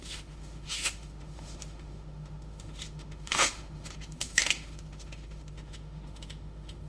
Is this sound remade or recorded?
remade